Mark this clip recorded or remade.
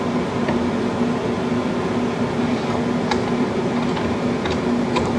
recorded